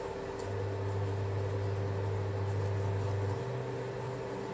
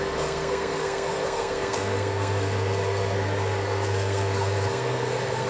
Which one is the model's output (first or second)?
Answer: second